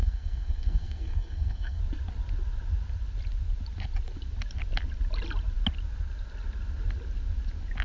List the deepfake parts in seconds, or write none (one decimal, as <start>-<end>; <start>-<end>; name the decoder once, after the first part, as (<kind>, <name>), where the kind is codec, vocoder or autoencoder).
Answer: 0.0-1.8 (codec, SNAC)